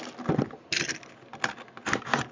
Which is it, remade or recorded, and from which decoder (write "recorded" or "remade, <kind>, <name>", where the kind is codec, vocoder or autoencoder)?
recorded